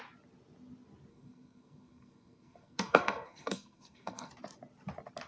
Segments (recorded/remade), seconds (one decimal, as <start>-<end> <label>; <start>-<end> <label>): 0.0-1.1 recorded; 1.1-4.3 remade; 4.3-5.3 recorded